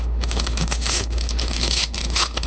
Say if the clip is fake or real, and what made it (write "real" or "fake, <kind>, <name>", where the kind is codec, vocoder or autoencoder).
fake, autoencoder, DAC-VAE